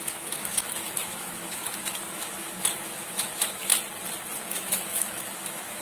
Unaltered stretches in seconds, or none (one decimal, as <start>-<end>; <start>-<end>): 3.7-4.5

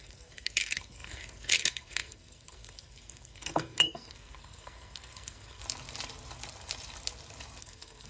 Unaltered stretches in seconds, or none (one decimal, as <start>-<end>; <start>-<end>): 5.6-7.6

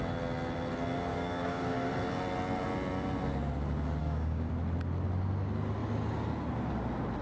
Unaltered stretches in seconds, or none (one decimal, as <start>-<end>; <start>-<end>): 0.0-1.1; 1.9-4.0; 4.5-7.2